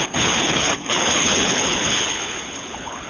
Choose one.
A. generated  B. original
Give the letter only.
A